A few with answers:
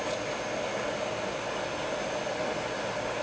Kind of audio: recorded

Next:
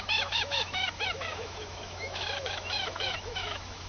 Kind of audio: remade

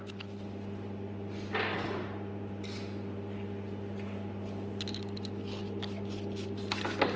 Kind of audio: recorded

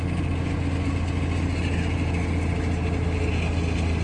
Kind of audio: recorded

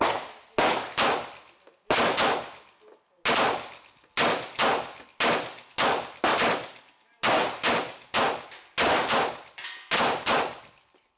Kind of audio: recorded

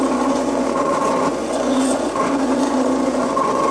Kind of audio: remade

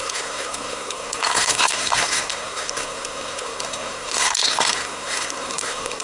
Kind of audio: remade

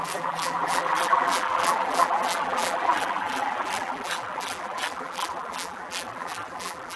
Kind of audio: remade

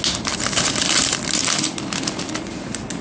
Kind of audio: recorded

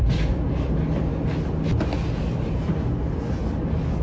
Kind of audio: recorded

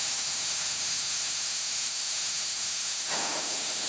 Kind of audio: remade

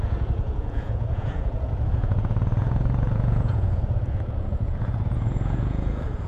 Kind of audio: remade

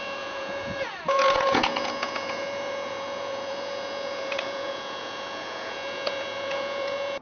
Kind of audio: remade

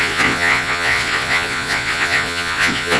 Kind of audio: remade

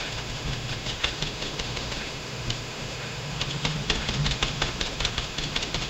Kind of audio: remade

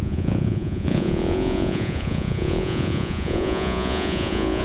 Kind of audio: remade